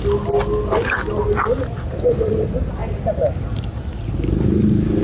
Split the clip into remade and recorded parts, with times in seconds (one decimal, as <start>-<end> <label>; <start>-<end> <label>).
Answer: 0.0-5.0 recorded